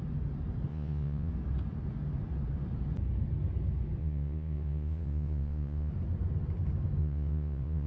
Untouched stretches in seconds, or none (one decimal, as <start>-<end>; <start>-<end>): 0.0-0.7; 1.3-4.0; 5.9-7.0